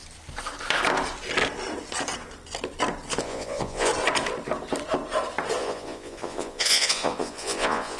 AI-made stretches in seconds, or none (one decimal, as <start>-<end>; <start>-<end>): 3.2-3.9; 5.6-8.0